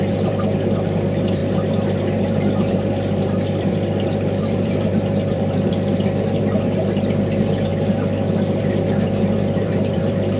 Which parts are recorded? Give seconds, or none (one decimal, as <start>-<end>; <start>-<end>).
1.4-2.7; 7.7-8.6